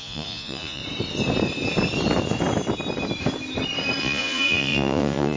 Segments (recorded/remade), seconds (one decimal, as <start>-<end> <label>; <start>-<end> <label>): 0.0-0.8 remade; 0.8-4.0 recorded; 4.0-5.4 remade

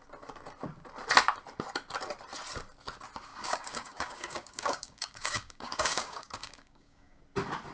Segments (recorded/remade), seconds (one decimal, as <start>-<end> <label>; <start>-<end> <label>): 0.0-3.3 recorded; 3.3-7.2 remade; 7.2-7.7 recorded

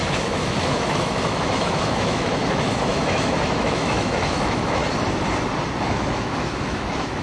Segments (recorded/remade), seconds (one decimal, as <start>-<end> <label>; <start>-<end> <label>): 0.0-4.8 remade; 4.8-5.8 recorded; 5.8-7.2 remade

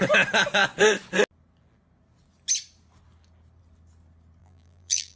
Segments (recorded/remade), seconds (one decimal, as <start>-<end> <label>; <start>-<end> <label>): 0.0-4.4 recorded; 4.4-5.2 remade

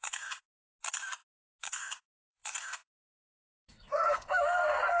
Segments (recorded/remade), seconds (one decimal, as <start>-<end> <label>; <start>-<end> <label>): 0.0-0.7 remade; 0.7-1.6 recorded; 1.6-5.0 remade

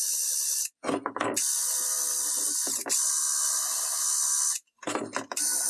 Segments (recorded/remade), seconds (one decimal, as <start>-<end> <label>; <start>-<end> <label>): 0.0-5.7 recorded